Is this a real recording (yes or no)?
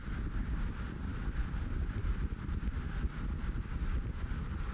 yes